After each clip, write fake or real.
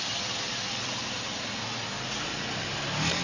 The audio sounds real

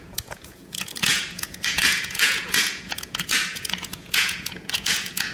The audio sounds fake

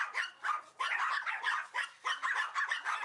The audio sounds real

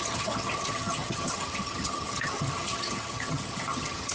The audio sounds fake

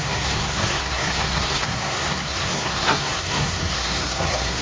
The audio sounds fake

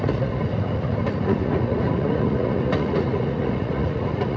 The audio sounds fake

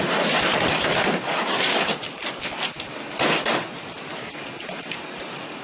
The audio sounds real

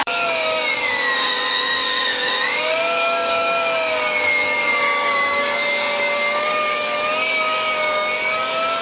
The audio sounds fake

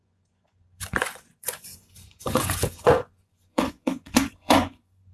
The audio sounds fake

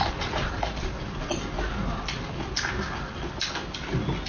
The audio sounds real